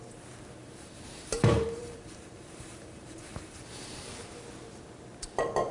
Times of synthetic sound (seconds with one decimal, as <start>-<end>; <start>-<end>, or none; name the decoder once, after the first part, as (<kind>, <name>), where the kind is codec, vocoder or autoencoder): 0.6-4.0 (vocoder, BigVGAN v2)

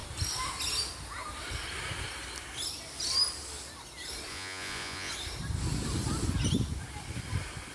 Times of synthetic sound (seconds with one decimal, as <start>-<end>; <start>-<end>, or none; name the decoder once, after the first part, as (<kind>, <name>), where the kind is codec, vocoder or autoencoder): 4.3-5.1 (vocoder, Vocos)

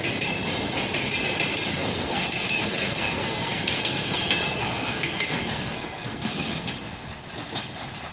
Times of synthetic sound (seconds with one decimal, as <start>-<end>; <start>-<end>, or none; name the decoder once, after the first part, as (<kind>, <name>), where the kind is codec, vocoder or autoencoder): 1.8-6.7 (codec, SNAC)

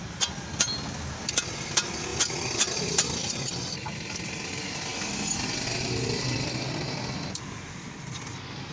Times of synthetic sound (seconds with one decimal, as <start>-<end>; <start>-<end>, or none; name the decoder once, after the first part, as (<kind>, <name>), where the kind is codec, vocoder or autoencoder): none

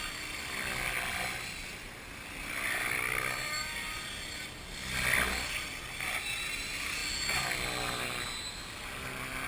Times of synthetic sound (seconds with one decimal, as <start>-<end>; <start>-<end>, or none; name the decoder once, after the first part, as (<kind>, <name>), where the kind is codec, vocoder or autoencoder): none

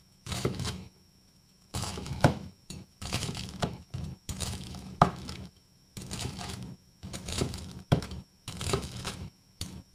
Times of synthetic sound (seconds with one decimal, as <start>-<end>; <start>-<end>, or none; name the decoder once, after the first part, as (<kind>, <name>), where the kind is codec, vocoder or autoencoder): 0.0-9.9 (autoencoder, DAC-VAE)

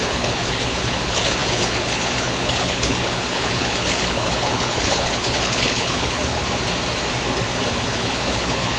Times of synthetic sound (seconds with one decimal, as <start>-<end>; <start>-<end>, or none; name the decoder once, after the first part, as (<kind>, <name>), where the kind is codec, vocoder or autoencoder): 0.0-6.4 (codec, HILCodec); 7.7-8.8